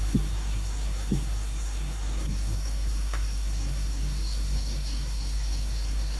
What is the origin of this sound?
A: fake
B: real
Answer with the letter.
A